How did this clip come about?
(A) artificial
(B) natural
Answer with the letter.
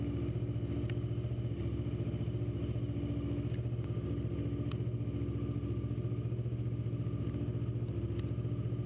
B